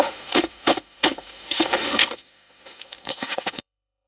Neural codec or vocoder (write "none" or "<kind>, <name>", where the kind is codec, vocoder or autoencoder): autoencoder, DAC-VAE